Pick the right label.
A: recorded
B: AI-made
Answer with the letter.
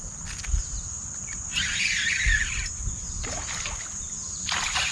A